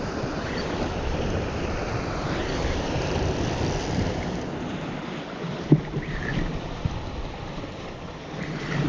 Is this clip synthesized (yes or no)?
yes